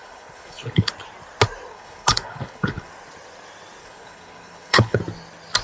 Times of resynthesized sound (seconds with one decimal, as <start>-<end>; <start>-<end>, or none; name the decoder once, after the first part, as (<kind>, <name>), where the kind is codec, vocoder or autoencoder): 0.0-0.9 (codec, HILCodec); 1.7-2.9; 3.8-5.0

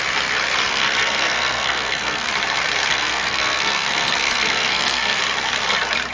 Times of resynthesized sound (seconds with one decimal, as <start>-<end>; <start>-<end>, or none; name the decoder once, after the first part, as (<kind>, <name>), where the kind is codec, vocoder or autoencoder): 0.7-2.3 (codec, SNAC); 2.9-5.2

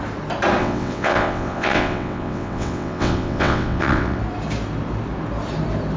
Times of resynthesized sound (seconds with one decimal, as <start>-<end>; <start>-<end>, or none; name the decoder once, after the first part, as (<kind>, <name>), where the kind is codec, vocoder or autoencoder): 0.6-4.2 (vocoder, WaveNeXt)

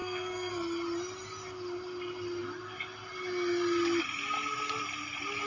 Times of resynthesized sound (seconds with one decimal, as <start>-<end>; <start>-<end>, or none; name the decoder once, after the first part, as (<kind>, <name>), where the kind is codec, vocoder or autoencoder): 0.0-0.5 (codec, SNAC)